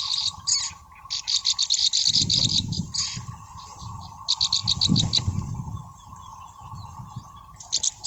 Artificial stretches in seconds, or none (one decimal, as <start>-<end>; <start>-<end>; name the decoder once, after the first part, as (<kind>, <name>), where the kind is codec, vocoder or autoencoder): none